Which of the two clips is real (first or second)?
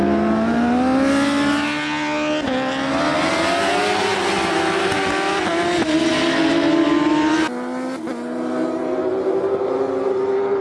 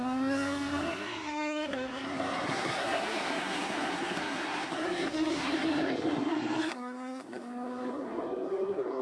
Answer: first